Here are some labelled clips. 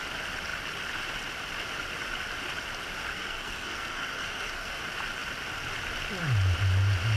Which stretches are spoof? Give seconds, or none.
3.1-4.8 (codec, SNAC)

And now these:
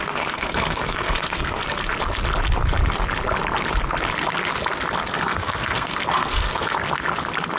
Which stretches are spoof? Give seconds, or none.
0.0-1.6 (codec, SNAC); 5.1-6.7

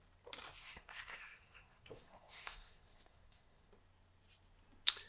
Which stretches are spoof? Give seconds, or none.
0.6-3.7 (codec, SNAC)

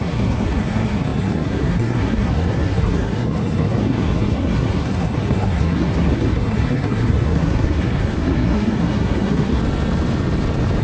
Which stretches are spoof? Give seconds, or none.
0.0-9.6 (codec, SNAC)

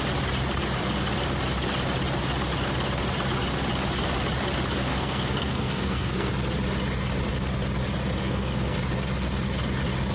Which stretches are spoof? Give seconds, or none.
4.9-6.3 (codec, SNAC); 8.2-8.8

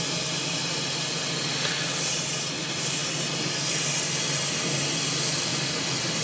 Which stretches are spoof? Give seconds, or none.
none

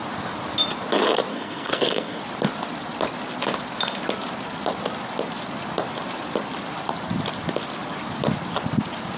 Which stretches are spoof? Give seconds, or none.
1.3-2.2 (codec, SNAC)